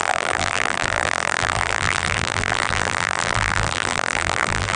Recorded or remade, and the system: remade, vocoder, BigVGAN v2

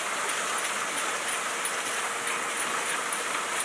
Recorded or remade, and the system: recorded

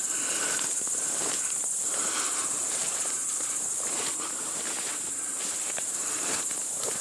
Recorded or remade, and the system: remade, vocoder, BigVGAN v2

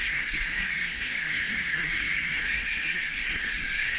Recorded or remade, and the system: remade, codec, SNAC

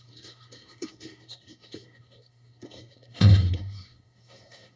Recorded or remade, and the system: remade, codec, SNAC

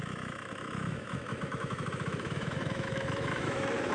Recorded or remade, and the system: remade, autoencoder, DAC-VAE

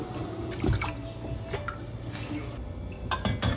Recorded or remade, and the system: recorded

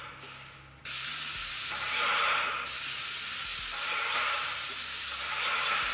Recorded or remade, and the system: recorded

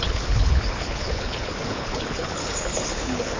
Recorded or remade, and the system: remade, codec, HILCodec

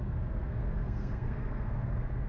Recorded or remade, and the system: remade, codec, SNAC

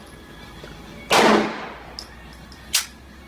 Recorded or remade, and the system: recorded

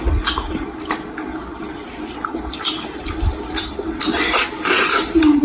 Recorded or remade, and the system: recorded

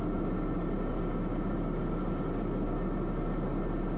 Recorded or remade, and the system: recorded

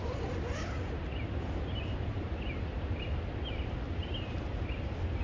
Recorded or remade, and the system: recorded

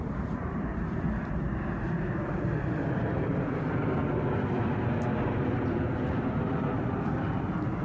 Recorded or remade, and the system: remade, vocoder, BigVGAN v2